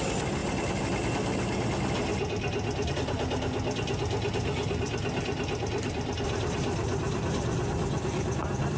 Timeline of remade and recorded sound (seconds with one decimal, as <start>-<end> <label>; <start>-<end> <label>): 0.0-8.8 recorded